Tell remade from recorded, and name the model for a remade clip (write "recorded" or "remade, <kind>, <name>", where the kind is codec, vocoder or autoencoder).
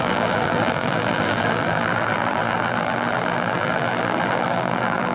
remade, vocoder, BigVGAN v2